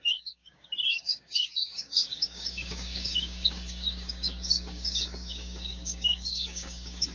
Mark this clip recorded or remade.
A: remade